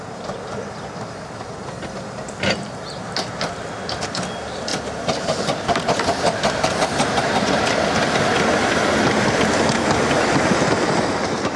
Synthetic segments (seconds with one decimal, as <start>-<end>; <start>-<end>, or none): 4.7-7.6